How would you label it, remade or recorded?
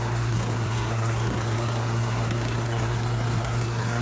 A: remade